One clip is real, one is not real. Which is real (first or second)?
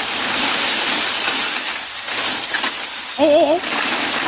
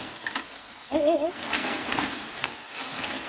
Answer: first